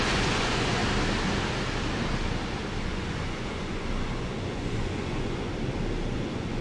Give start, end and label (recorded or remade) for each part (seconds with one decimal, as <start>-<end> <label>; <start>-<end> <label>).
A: 0.0-0.8 remade; 0.8-2.8 recorded; 2.8-5.5 remade; 5.5-6.1 recorded; 6.1-6.6 remade